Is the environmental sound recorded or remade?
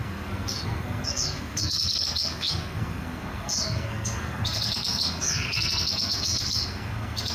remade